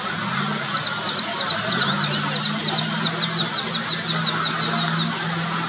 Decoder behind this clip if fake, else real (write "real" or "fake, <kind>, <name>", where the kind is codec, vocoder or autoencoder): real